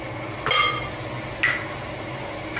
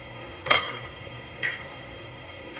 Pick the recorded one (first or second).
first